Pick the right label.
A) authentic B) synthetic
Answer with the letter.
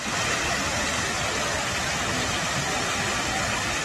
A